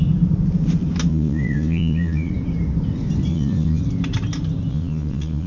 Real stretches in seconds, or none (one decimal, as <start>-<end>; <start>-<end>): 0.0-1.1; 2.3-3.3; 3.8-4.7